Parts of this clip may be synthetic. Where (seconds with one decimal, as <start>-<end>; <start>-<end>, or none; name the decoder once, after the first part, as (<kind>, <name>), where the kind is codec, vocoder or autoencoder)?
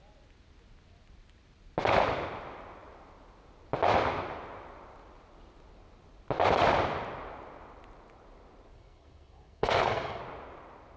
8.7-10.2 (codec, SNAC)